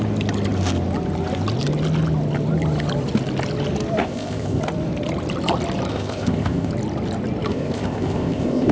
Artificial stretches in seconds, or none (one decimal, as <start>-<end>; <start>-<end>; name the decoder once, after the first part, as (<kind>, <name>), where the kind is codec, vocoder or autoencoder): 4.0-4.6 (codec, ZipCodec); 5.9-6.7; 7.5-8.7